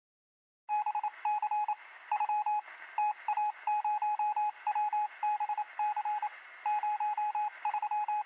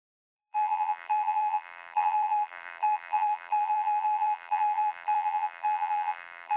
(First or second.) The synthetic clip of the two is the second